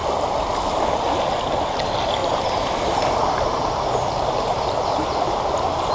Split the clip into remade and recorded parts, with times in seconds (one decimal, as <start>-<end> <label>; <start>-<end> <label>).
0.0-2.2 recorded; 2.2-5.9 remade